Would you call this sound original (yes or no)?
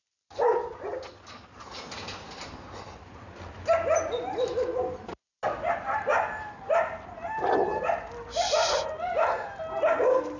yes